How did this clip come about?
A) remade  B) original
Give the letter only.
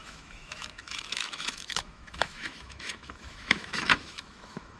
A